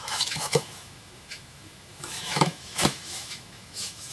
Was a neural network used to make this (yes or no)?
yes